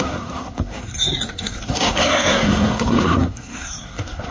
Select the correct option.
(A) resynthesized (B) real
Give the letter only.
A